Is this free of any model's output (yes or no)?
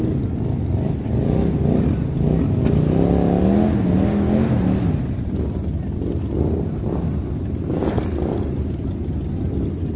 yes